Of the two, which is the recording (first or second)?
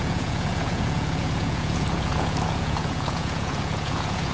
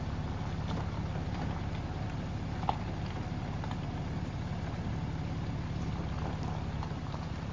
second